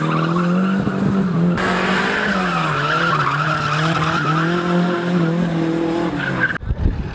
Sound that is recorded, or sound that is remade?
recorded